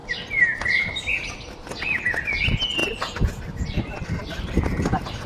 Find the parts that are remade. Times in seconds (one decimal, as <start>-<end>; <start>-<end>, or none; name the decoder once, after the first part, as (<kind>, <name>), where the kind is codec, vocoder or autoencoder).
none